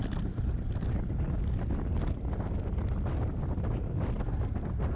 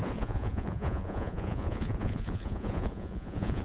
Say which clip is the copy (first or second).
second